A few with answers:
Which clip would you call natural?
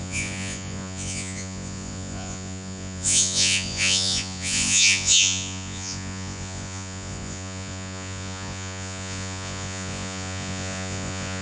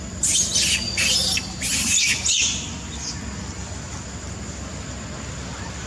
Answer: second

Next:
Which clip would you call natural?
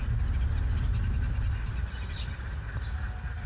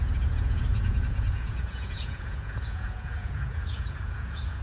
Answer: first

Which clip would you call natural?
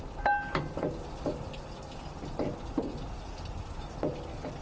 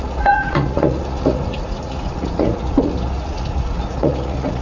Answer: first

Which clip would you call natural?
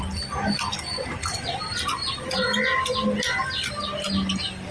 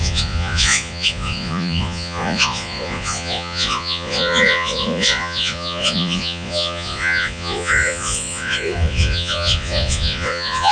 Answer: first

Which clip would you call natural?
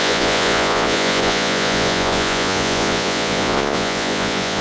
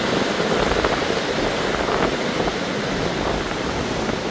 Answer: second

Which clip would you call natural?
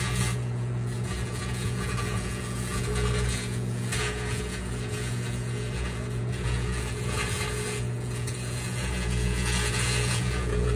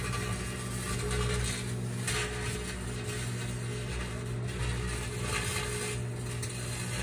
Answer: second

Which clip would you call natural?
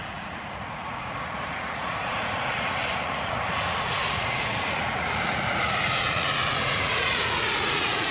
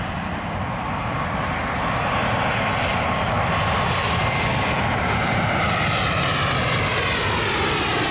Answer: second